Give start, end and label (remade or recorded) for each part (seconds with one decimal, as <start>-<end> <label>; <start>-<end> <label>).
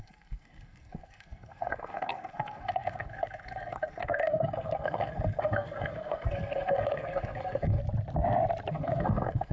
0.0-7.8 remade; 7.8-8.7 recorded; 8.7-9.5 remade